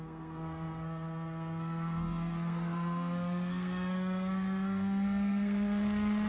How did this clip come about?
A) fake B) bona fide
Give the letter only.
A